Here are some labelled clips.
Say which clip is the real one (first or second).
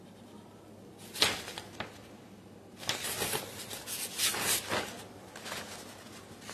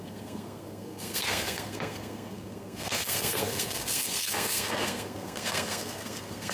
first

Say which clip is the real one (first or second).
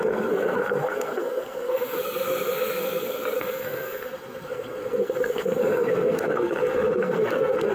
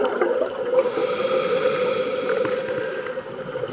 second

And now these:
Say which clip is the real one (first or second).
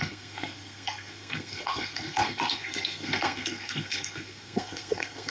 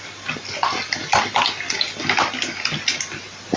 second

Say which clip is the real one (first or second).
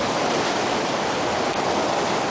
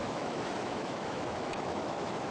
first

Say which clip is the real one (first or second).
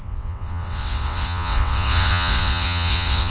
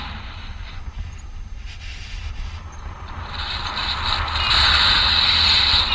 second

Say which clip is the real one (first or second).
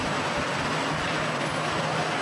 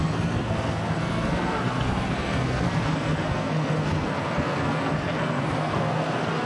first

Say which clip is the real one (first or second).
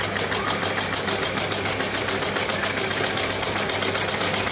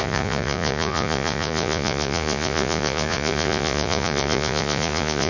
first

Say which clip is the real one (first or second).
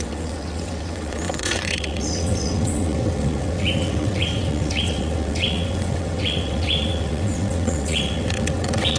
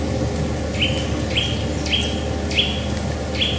second